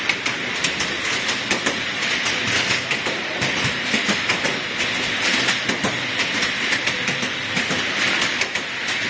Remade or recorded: recorded